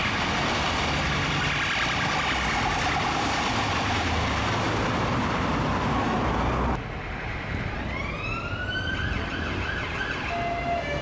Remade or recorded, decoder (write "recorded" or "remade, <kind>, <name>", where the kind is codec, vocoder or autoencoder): recorded